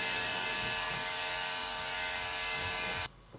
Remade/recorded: remade